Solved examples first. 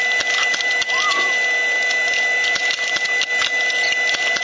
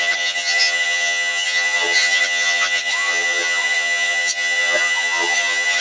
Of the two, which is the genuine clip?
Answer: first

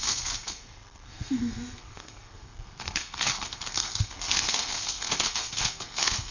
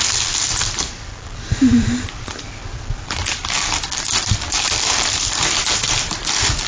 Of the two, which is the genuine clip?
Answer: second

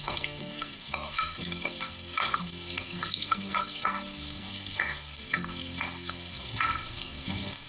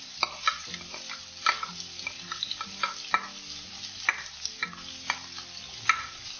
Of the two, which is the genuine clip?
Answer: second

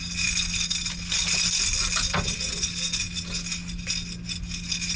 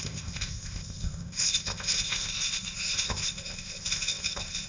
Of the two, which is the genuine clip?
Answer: first